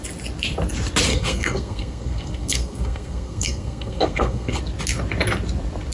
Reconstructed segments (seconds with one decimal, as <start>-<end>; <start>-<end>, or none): 1.1-4.6